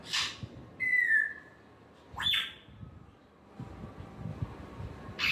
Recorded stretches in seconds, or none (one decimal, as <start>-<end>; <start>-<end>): 0.0-4.3

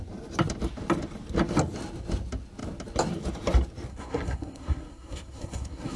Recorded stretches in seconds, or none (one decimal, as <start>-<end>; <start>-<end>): 0.0-3.9

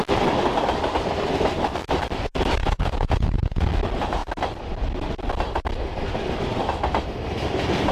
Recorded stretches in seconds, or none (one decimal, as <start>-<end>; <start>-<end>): 0.0-2.6; 3.7-7.9

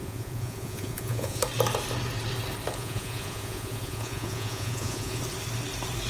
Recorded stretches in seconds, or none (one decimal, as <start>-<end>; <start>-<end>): 1.4-2.8; 5.2-6.1

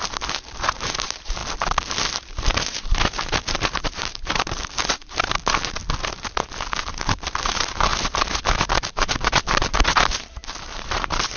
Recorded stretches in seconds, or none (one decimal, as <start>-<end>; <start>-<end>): 1.4-2.1; 5.8-6.9; 7.9-8.6

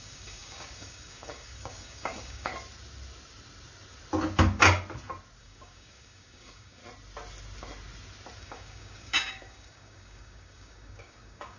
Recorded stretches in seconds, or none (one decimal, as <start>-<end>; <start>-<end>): 2.5-5.4; 6.8-8.4

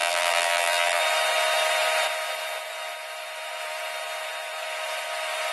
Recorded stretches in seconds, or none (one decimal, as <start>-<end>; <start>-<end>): 1.0-5.5

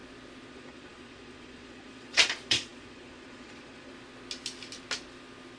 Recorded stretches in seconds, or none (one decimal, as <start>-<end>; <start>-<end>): 0.0-0.5; 3.9-5.6